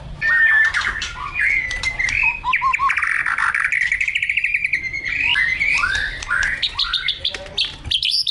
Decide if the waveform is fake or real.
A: fake